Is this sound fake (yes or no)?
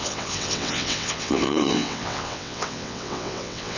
yes